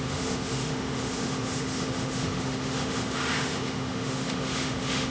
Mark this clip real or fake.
fake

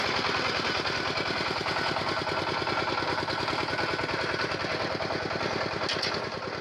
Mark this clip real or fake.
real